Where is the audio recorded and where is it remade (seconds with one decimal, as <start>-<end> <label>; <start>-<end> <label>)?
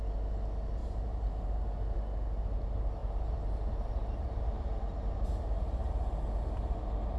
0.0-0.8 recorded; 0.8-1.5 remade; 1.5-3.0 recorded; 3.0-5.9 remade; 5.9-7.2 recorded